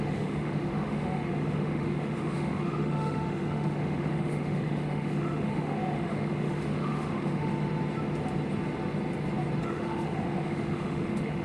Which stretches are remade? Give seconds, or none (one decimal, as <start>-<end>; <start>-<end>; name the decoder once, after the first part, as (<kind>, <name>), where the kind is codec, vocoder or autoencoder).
0.0-7.5 (autoencoder, DAC-VAE); 9.6-11.4